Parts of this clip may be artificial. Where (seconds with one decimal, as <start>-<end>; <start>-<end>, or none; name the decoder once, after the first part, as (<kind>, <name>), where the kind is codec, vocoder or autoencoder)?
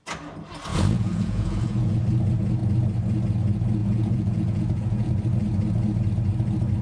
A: 0.7-2.0 (vocoder, Vocos); 3.8-5.1